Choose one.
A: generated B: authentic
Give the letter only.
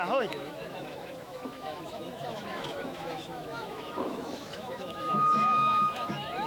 A